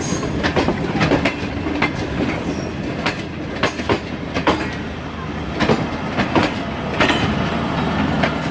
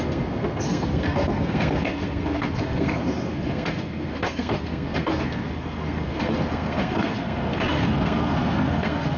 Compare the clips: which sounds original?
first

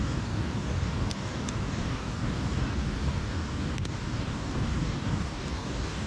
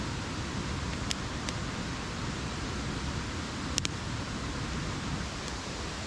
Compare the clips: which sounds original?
second